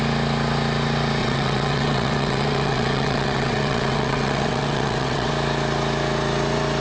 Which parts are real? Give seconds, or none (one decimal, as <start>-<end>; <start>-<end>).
0.0-1.2; 5.3-6.8

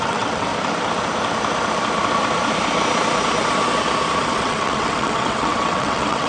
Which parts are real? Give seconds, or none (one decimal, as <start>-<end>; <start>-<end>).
0.5-4.3

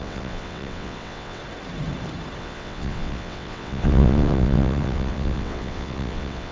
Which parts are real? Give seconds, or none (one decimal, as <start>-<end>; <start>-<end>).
1.4-2.4

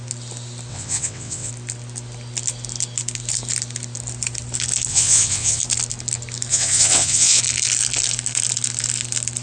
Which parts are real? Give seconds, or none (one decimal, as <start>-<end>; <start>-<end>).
0.0-0.7; 1.5-4.9; 5.6-6.5; 7.4-9.4

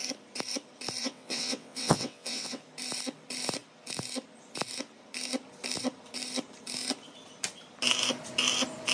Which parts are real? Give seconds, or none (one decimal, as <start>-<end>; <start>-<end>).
0.0-1.0; 2.6-8.9

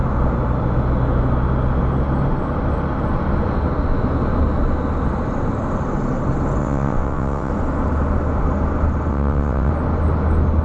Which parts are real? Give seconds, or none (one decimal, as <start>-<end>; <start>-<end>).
0.0-6.6; 7.5-9.1; 9.7-10.6